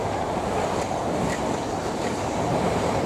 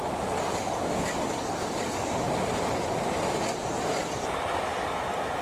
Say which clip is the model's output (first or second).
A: first